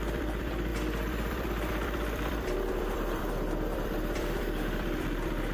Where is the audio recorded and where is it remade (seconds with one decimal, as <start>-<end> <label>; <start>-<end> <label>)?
0.0-5.5 remade